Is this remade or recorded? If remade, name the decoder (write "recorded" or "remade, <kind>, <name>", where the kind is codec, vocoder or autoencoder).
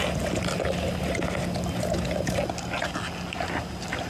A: recorded